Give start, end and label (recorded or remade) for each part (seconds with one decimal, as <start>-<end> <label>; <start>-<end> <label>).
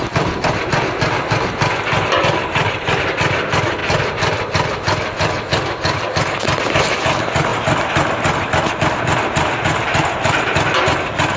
0.0-11.4 recorded